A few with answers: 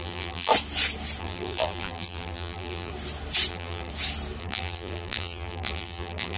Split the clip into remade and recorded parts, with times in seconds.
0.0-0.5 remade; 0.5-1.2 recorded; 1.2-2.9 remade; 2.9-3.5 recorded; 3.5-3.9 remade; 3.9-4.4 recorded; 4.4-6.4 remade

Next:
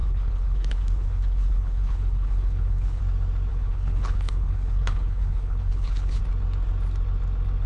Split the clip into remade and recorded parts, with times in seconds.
0.0-3.0 remade; 3.0-3.5 recorded; 3.5-6.2 remade; 6.2-7.7 recorded

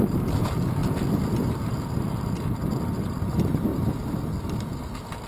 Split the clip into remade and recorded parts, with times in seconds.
0.0-5.3 recorded

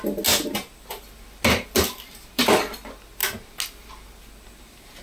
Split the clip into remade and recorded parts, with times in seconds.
0.0-5.0 recorded

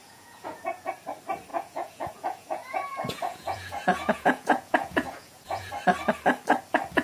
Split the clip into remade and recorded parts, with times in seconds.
0.0-0.9 remade; 0.9-1.5 recorded; 1.5-5.7 remade; 5.7-7.0 recorded

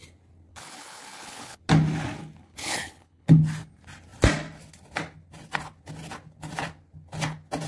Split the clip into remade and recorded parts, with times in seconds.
0.0-0.5 recorded; 0.5-1.6 remade; 1.6-2.4 recorded; 2.4-3.4 remade; 3.4-7.7 recorded

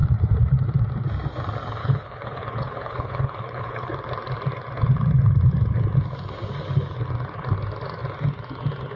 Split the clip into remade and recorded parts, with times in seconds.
0.0-1.8 recorded; 1.8-3.9 remade; 3.9-9.0 recorded